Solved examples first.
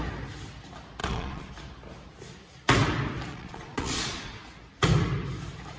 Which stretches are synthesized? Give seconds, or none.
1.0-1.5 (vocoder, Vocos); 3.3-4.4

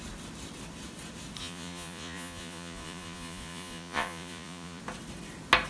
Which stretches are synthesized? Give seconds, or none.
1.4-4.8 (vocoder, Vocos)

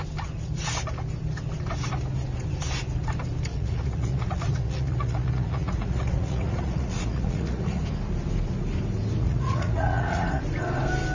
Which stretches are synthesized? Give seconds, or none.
3.5-7.8 (vocoder, Vocos); 9.2-10.4